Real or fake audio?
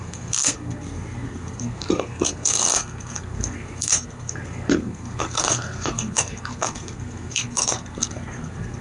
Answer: fake